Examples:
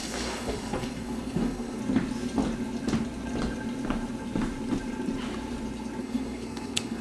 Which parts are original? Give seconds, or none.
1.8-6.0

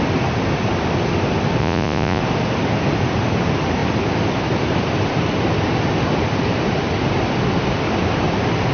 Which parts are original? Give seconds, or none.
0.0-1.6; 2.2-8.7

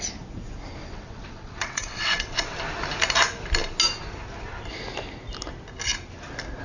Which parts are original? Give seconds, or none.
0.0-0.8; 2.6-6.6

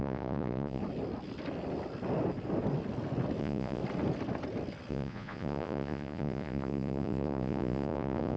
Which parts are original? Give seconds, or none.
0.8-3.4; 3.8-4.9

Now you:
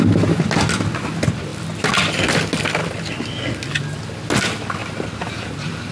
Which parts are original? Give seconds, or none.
0.0-4.8; 5.5-5.9